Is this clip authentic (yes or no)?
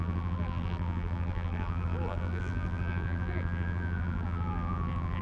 no